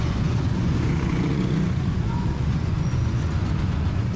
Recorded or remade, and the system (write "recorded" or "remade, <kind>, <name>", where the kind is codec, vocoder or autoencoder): remade, vocoder, Vocos